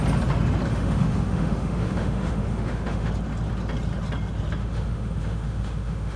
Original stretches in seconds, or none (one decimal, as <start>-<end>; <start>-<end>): 0.0-0.7; 3.1-4.6